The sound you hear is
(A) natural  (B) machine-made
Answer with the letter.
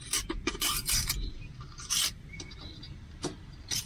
B